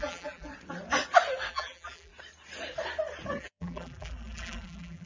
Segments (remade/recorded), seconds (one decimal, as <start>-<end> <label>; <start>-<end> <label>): 0.0-0.5 remade; 0.5-1.5 recorded; 1.5-2.1 remade; 2.1-3.4 recorded; 3.4-5.1 remade